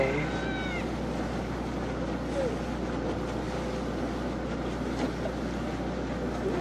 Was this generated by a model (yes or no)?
no